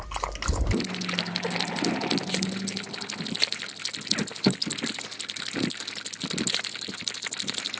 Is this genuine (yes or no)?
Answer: yes